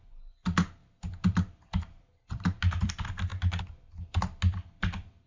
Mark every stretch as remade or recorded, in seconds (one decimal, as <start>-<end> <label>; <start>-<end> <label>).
0.0-0.8 recorded; 0.8-2.9 remade; 2.9-3.3 recorded; 3.3-4.2 remade; 4.2-5.3 recorded